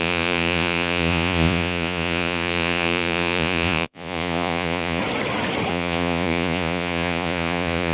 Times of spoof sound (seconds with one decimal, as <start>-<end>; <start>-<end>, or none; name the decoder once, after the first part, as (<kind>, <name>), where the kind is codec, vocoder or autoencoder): 0.0-5.0 (vocoder, Vocos); 5.7-7.9

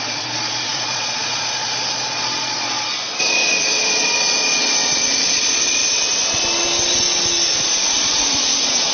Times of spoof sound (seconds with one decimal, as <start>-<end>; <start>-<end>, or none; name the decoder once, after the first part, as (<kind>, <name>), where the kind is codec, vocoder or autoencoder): 0.0-5.8 (vocoder, Vocos); 7.9-8.9

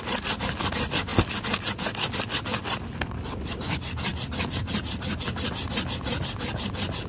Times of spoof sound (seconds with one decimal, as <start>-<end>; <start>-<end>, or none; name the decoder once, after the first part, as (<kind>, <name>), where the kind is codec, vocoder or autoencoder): none

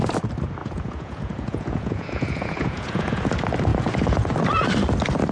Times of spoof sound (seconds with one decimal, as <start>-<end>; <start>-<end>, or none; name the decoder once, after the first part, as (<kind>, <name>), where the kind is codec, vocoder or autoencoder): 0.6-3.2 (vocoder, Vocos)

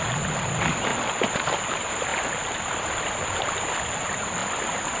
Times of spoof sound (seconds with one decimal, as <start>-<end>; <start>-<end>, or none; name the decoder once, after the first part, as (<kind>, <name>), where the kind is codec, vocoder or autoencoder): none

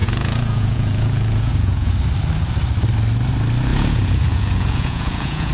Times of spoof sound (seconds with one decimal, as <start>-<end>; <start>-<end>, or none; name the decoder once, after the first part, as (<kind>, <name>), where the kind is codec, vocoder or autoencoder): 0.0-1.9 (vocoder, Vocos); 3.7-5.5